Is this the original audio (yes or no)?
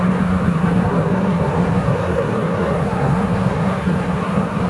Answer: no